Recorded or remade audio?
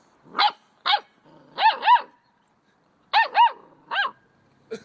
recorded